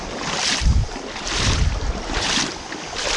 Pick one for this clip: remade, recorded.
recorded